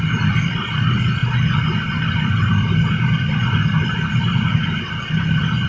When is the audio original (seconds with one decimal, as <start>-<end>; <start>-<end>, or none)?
0.0-5.7